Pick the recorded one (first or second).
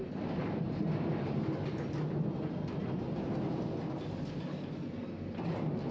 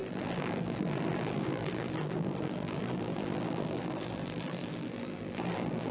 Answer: first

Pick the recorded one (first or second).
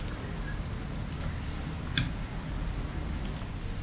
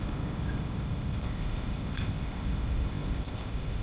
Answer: first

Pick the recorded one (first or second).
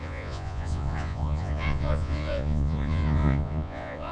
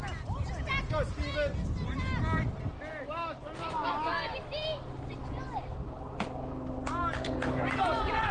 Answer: second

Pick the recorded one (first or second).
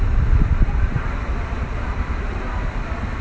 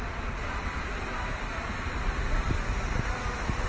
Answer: second